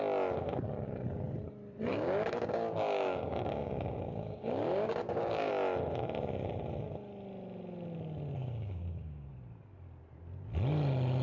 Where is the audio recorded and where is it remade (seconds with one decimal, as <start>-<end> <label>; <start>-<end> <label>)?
0.0-1.9 recorded; 1.9-5.5 remade; 5.5-8.4 recorded; 8.4-9.3 remade; 9.3-11.2 recorded